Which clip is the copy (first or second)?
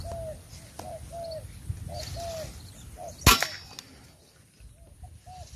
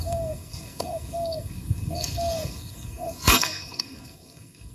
second